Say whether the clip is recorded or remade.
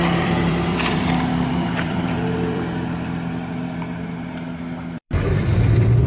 remade